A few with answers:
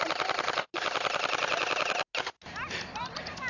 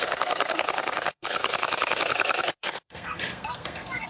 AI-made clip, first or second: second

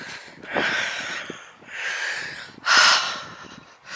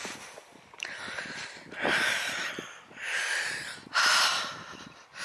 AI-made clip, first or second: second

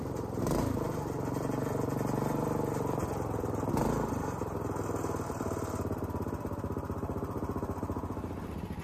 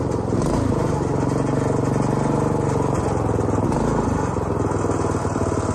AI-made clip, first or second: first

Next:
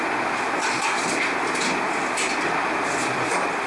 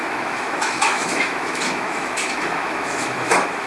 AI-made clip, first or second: second